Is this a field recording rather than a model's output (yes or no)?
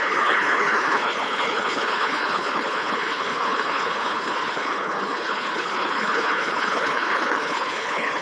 no